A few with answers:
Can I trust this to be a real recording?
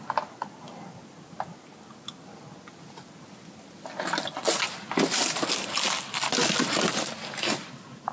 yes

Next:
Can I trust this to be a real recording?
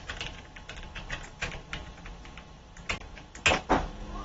yes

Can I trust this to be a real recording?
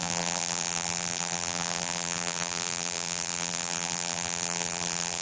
no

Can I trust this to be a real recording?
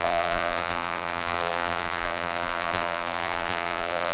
no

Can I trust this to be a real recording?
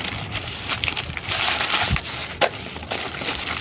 yes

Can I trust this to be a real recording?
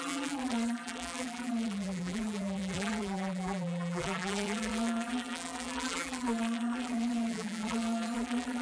no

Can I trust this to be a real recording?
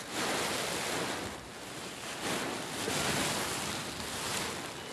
yes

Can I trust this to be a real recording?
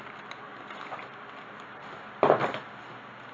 yes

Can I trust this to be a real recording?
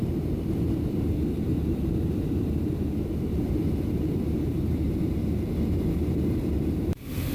no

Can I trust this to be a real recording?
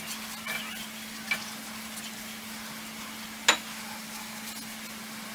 yes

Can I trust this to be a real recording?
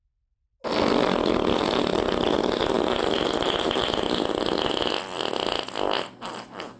yes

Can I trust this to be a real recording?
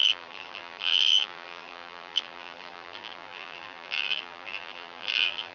no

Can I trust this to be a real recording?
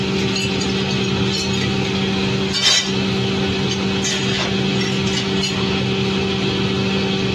yes